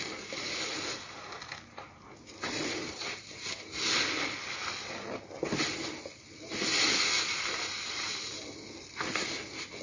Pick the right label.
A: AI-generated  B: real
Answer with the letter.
B